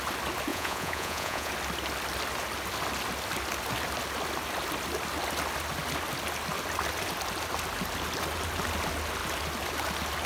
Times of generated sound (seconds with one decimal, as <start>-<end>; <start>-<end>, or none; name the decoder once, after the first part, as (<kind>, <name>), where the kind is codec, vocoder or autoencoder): 0.5-1.5 (vocoder, Vocos)